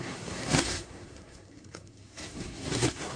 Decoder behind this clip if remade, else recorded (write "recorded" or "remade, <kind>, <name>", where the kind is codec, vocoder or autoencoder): remade, codec, SNAC